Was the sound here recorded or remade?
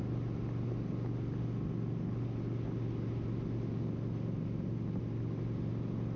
recorded